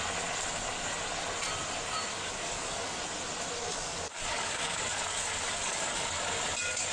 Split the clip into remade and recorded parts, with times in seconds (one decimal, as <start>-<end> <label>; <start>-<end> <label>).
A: 0.0-2.1 recorded; 2.1-3.0 remade; 3.0-3.6 recorded; 3.6-6.2 remade; 6.2-6.9 recorded